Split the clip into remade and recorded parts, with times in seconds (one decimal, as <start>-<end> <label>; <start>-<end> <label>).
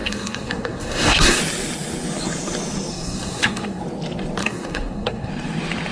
0.0-1.4 remade; 1.4-2.9 recorded; 2.9-3.8 remade; 3.8-4.4 recorded; 4.4-5.3 remade; 5.3-5.9 recorded